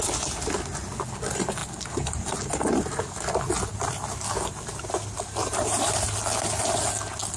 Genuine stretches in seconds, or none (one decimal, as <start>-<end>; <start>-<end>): 0.0-5.4; 6.1-7.4